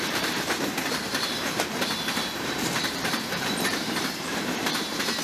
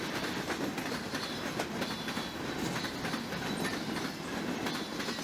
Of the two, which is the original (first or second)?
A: second